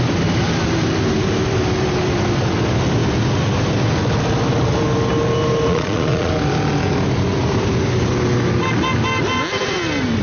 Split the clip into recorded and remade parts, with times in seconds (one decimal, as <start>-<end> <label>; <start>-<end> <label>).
0.0-5.7 recorded; 5.7-6.3 remade; 6.3-10.2 recorded